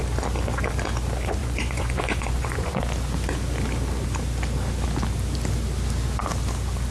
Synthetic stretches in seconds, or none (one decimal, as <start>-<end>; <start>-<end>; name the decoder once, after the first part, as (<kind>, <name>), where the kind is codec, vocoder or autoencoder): 1.4-2.8 (vocoder, Vocos)